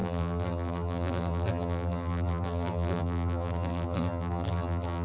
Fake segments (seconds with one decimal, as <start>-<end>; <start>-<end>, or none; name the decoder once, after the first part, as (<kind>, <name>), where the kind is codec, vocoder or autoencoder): 0.0-5.0 (vocoder, BigVGAN v2)